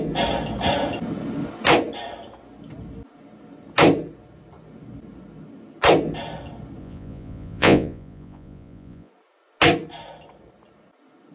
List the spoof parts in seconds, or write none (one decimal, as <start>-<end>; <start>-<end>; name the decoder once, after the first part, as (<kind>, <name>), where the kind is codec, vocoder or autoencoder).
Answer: 6.8-9.1 (vocoder, Vocos)